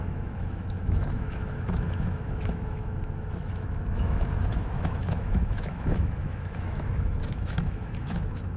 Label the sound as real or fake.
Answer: fake